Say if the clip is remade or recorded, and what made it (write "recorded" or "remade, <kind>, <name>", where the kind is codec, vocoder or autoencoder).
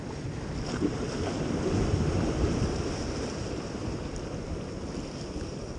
recorded